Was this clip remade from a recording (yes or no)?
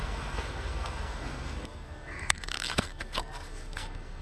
yes